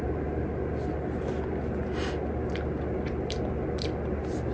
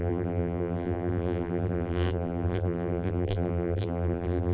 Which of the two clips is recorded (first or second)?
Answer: first